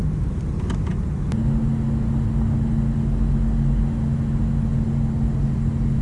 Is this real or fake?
real